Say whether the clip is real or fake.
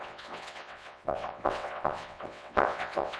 fake